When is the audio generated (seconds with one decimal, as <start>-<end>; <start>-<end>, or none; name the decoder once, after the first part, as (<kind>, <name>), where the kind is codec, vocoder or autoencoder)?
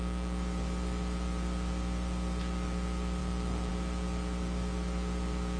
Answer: 3.2-3.7 (autoencoder, DAC-VAE)